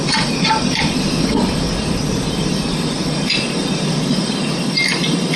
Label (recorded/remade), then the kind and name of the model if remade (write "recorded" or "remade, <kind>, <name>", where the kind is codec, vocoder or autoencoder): recorded